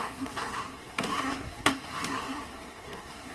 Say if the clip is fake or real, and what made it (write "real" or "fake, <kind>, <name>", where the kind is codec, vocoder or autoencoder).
fake, codec, SNAC